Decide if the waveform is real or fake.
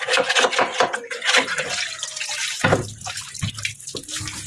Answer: real